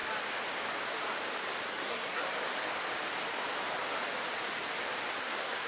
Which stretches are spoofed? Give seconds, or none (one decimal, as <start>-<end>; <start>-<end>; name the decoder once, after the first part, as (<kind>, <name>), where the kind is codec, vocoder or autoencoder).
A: 1.7-2.2 (codec, SNAC); 5.2-5.7